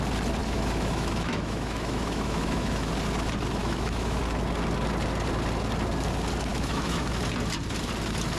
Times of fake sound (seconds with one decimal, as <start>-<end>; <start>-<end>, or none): 0.4-2.9; 3.6-4.2; 6.5-7.2